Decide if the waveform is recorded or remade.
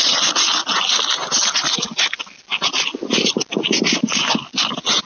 recorded